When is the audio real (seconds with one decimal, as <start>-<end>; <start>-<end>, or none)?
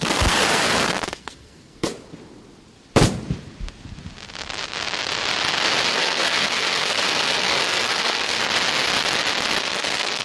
1.9-5.9; 8.4-9.6